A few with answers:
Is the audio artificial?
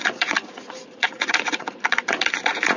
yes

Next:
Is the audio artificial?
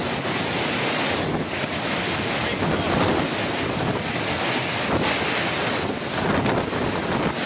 no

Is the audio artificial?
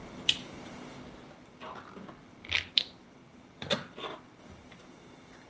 no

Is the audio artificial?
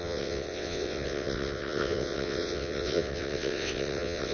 yes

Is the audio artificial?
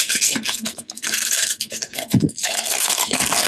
yes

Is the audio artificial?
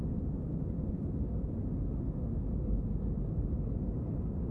no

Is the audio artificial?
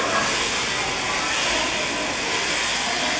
no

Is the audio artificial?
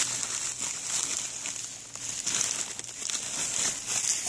no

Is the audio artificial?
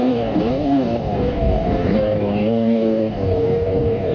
yes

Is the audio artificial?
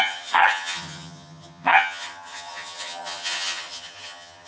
yes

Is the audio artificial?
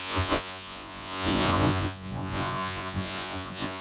yes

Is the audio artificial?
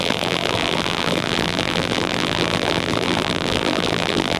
yes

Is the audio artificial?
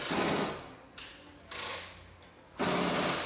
no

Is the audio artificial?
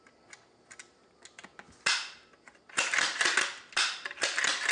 no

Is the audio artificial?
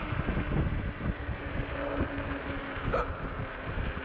no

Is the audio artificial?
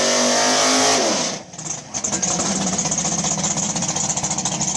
no